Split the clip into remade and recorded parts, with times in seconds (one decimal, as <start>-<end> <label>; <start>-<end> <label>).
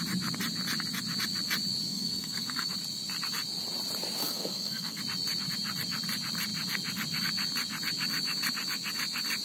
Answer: 0.0-1.9 recorded; 1.9-2.7 remade; 2.7-4.2 recorded; 4.2-5.0 remade; 5.0-9.4 recorded